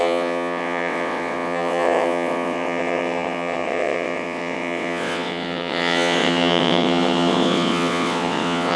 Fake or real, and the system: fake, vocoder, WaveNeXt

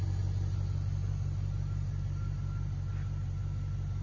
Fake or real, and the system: real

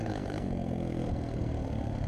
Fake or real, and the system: fake, codec, SNAC